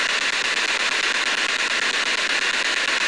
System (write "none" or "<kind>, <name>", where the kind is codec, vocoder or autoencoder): none